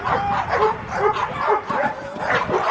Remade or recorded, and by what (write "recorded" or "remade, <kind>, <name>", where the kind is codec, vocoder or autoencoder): recorded